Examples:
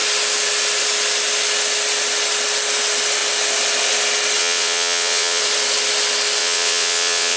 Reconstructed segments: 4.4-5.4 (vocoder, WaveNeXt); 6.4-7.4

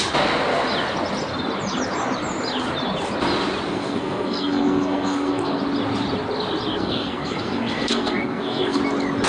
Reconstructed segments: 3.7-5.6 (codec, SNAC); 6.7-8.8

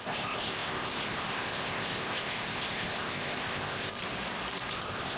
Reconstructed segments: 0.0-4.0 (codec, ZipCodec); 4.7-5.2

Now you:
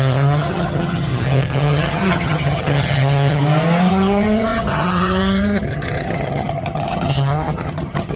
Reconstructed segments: 0.0-3.4 (vocoder, HiFi-GAN); 3.9-8.2

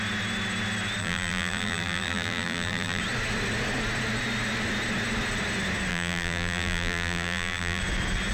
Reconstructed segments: 1.0-3.0 (vocoder, BigVGAN v2); 5.9-7.8

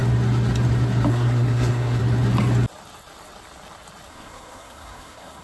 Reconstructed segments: 1.1-2.0 (codec, SNAC); 4.1-5.4

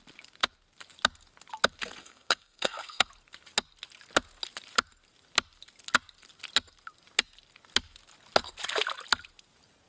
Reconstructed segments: 2.0-3.1 (codec, SNAC)